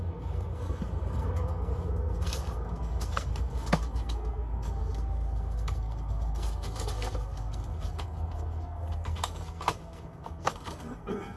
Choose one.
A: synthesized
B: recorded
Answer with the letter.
A